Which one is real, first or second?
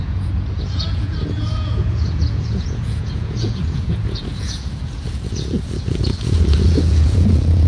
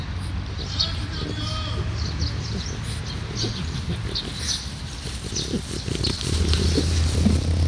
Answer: second